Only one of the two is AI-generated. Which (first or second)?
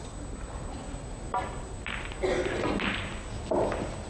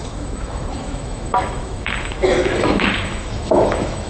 second